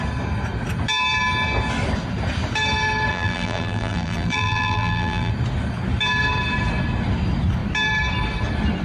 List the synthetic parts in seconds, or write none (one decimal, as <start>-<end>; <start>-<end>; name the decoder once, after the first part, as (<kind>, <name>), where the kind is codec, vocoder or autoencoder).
3.1-5.3 (vocoder, BigVGAN v2)